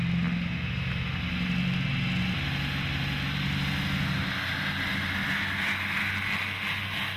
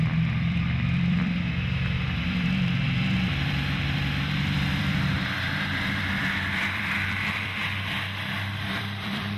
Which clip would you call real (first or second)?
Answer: first